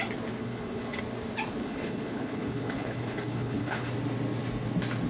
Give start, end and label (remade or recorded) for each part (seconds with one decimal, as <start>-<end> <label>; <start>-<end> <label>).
0.0-0.4 recorded; 0.4-1.0 remade; 1.0-1.6 recorded; 1.6-3.9 remade; 3.9-5.1 recorded